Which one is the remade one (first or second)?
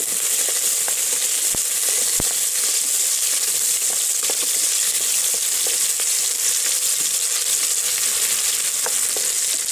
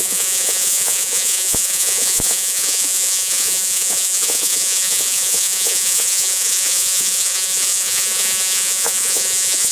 second